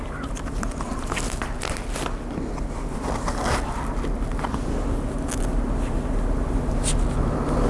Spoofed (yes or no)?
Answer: no